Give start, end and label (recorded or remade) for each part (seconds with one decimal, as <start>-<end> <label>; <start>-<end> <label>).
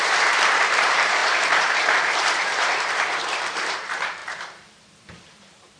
0.0-5.8 remade